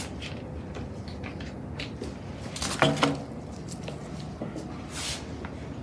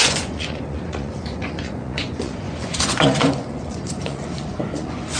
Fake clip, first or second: second